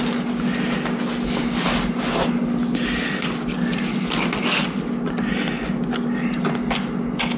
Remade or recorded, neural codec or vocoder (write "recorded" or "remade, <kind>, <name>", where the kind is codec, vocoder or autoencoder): recorded